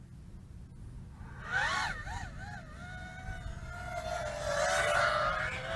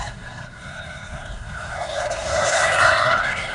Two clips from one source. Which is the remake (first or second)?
second